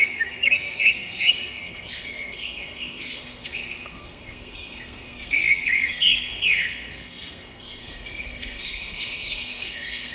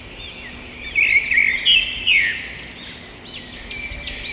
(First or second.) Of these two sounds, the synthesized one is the first